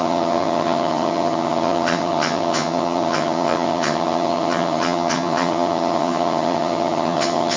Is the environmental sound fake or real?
fake